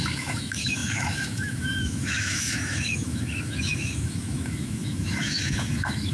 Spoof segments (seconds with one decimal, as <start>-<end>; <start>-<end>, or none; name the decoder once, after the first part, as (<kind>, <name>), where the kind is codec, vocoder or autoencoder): 0.0-6.1 (autoencoder, DAC-VAE)